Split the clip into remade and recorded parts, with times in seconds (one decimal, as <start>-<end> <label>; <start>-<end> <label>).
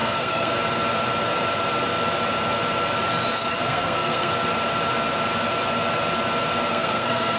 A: 0.0-0.5 remade; 0.5-3.5 recorded; 3.5-4.3 remade; 4.3-6.7 recorded; 6.7-7.4 remade